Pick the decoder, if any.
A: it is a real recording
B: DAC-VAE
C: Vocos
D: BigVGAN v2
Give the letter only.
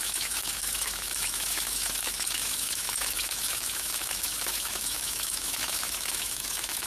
B